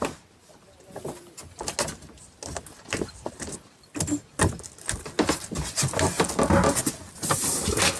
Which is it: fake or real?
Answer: real